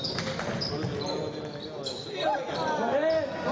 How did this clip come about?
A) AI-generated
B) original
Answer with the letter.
B